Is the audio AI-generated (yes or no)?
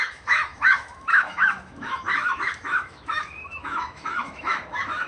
yes